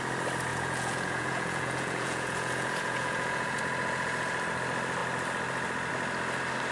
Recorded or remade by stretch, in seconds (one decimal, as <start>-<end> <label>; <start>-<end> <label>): 0.0-0.5 recorded; 0.5-3.6 remade; 3.6-6.7 recorded